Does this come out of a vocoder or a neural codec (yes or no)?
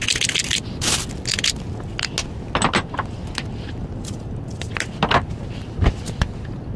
no